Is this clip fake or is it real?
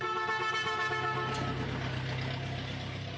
real